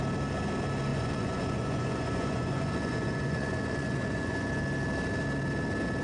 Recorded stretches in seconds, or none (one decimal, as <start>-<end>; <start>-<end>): 0.0-0.9; 4.5-6.0